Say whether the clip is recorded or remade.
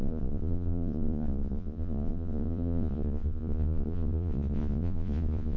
remade